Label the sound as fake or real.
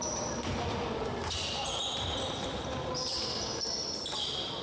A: fake